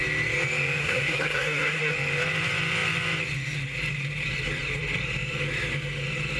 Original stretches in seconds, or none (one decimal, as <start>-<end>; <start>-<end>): 0.0-0.8; 1.9-6.4